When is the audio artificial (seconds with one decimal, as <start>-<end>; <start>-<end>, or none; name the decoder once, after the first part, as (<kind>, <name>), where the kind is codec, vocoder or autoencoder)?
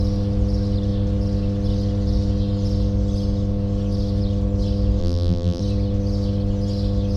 5.0-5.6 (vocoder, BigVGAN v2)